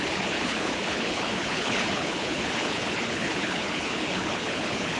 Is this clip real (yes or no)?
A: no